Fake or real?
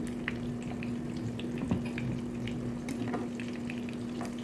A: real